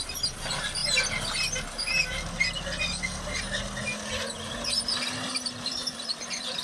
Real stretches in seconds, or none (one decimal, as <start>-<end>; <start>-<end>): 0.8-4.8